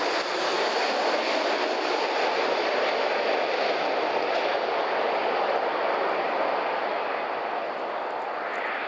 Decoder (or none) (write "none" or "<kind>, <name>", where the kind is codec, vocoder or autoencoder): none